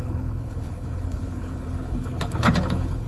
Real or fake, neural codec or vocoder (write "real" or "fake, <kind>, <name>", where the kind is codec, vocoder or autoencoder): fake, codec, HILCodec